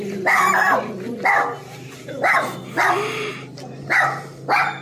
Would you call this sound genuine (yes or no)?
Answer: yes